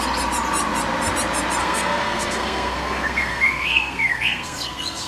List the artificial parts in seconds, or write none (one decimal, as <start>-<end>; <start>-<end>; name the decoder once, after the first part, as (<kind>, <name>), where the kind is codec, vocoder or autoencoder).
1.6-5.1 (codec, SNAC)